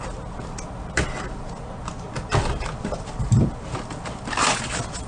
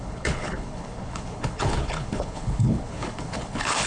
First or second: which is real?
first